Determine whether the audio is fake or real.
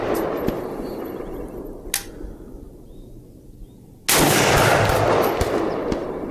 real